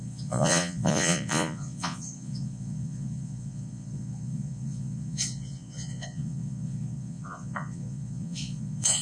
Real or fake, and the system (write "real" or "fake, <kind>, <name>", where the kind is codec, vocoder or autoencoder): fake, vocoder, Vocos